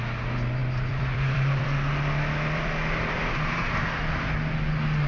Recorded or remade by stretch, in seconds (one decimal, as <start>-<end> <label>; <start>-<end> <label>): 0.0-0.6 recorded; 0.6-3.7 remade; 3.7-5.1 recorded